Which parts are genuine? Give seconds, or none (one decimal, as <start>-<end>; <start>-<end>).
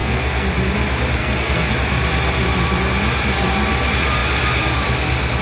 0.5-1.2; 1.7-5.4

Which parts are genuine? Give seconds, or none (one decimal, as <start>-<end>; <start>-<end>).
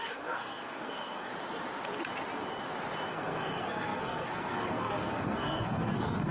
1.3-3.1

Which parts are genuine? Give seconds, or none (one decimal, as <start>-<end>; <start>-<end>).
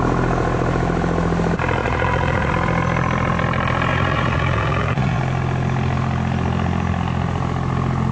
0.0-1.8; 2.5-3.9; 5.2-8.1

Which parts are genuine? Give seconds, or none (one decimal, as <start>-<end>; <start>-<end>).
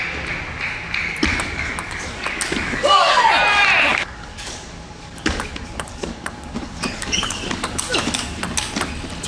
0.0-1.3; 3.2-3.9; 8.4-9.3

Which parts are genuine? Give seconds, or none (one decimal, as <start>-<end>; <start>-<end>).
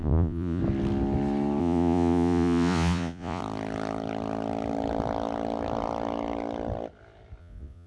0.6-1.6; 3.4-7.4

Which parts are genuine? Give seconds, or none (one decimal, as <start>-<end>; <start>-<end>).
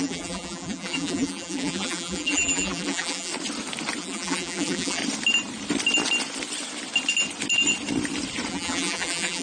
3.3-4.0; 5.0-8.5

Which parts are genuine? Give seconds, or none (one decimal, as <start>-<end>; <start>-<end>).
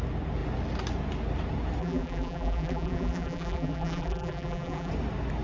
0.0-1.8; 4.9-5.4